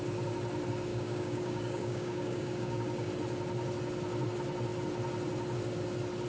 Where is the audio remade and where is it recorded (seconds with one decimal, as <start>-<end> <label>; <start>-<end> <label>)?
0.0-0.9 recorded; 0.9-3.1 remade; 3.1-6.3 recorded